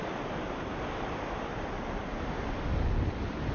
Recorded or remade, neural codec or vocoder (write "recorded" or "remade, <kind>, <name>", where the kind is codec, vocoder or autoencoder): recorded